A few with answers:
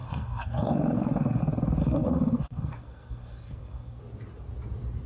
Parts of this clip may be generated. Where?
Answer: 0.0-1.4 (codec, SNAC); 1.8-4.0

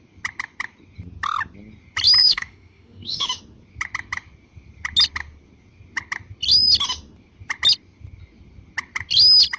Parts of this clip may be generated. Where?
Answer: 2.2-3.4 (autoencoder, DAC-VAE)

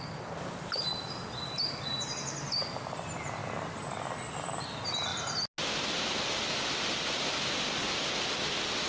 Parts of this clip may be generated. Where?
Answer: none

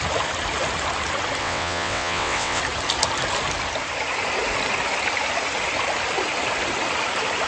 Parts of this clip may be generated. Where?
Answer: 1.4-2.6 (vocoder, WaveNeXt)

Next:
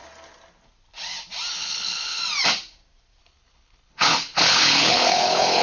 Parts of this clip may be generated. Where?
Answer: 1.5-2.2 (codec, HILCodec); 3.2-5.6

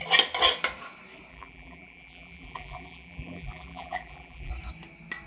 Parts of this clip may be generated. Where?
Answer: 1.3-4.5 (vocoder, BigVGAN v2)

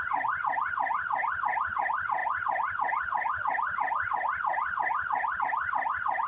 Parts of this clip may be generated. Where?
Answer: none

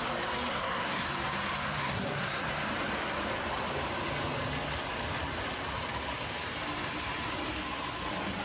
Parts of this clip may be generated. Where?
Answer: 0.5-1.1 (codec, SNAC); 1.8-2.5